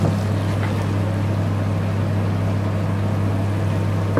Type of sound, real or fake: real